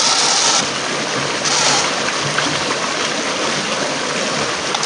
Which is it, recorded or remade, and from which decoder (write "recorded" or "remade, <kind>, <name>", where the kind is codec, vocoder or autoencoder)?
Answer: recorded